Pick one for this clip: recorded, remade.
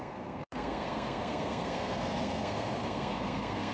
remade